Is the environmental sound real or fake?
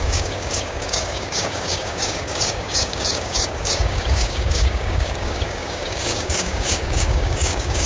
fake